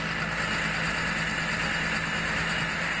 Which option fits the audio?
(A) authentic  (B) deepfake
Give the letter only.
A